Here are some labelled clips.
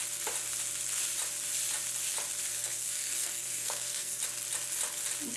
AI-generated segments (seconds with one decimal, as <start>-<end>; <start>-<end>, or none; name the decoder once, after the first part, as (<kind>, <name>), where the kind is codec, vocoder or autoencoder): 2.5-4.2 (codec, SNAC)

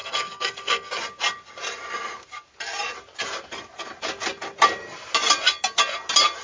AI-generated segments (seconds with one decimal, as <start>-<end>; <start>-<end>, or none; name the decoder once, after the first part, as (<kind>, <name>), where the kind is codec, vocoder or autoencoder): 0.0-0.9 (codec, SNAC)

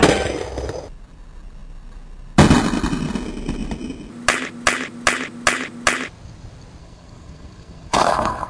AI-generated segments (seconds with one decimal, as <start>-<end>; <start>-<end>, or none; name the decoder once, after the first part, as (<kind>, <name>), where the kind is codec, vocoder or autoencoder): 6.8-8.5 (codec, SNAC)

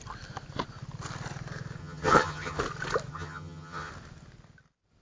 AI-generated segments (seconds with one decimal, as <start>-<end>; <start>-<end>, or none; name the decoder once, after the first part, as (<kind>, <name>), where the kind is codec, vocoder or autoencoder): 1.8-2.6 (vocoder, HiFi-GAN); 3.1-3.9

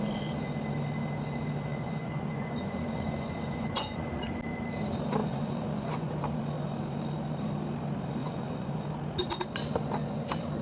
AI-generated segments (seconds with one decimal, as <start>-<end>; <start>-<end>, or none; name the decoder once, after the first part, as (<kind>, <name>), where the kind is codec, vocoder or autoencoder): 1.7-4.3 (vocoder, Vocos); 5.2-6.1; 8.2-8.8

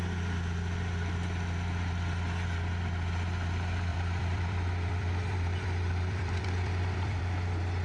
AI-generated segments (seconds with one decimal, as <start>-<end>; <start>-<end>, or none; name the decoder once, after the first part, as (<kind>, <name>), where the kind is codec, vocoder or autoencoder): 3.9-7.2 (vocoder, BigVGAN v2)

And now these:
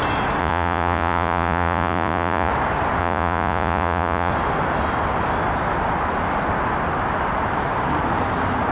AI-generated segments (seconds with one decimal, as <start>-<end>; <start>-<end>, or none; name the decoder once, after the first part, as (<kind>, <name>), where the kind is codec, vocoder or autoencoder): 0.4-2.5 (vocoder, Vocos); 3.0-4.3